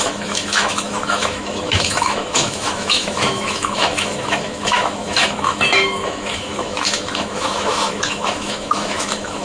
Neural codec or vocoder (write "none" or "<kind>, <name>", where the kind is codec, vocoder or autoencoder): autoencoder, DAC-VAE